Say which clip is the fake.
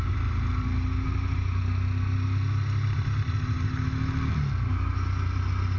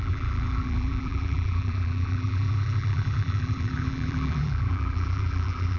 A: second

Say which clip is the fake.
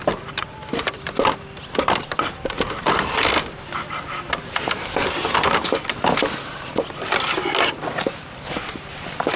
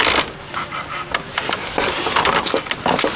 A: first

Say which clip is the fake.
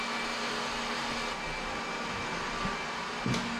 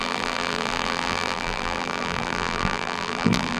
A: second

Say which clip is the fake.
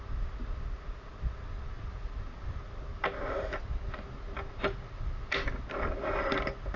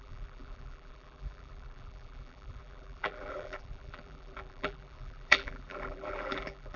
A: second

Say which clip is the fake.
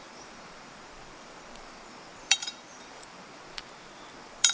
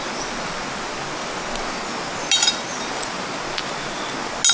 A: first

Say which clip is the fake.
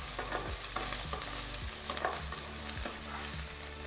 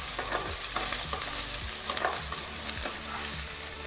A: second